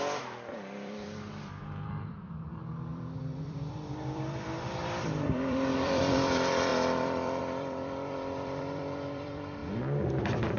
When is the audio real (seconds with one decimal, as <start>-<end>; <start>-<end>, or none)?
9.6-10.2